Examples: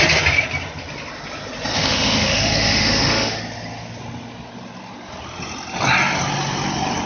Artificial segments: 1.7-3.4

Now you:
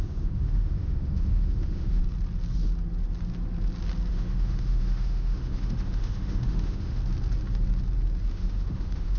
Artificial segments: 0.0-2.0; 4.1-7.0; 8.3-9.2

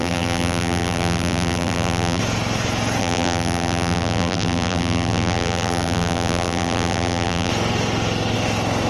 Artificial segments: 0.0-2.2; 3.0-7.5

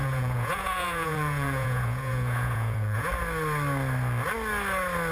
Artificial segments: 0.0-3.1